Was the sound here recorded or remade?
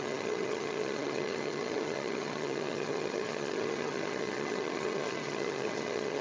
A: remade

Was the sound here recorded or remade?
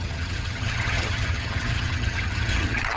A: remade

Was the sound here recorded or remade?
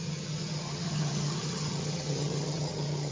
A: remade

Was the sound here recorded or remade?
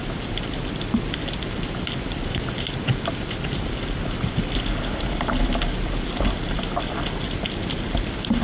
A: recorded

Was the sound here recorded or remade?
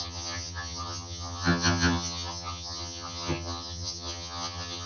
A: remade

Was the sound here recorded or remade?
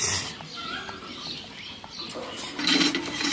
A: recorded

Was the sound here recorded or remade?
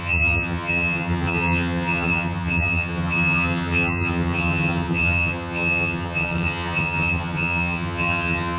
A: remade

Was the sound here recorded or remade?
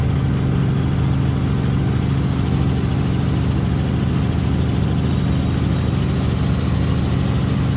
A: recorded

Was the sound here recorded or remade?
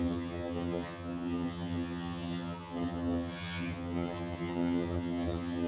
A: remade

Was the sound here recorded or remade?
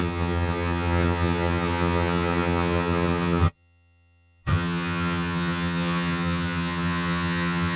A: remade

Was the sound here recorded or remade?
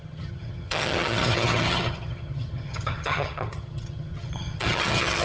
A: remade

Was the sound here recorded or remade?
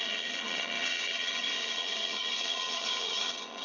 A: remade